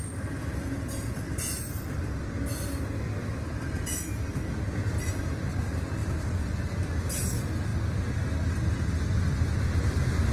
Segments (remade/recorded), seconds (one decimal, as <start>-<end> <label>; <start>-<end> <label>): 0.0-10.3 recorded

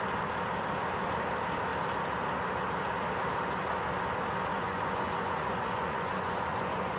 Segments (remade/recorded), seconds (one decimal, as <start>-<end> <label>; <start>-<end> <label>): 0.0-4.5 recorded; 4.5-7.0 remade

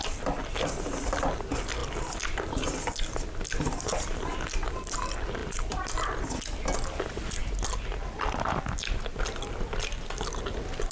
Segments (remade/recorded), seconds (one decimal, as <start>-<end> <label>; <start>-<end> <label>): 0.0-10.9 recorded

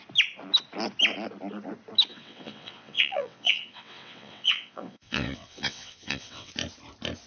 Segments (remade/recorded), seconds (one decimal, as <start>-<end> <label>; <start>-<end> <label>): 0.0-2.1 recorded; 2.1-6.5 remade; 6.5-7.3 recorded

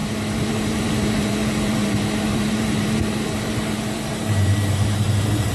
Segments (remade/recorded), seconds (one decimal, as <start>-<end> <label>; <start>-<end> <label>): 0.0-5.5 remade

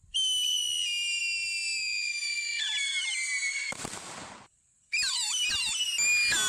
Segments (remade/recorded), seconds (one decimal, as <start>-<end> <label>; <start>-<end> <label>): 0.0-2.8 recorded; 2.8-5.5 remade; 5.5-6.5 recorded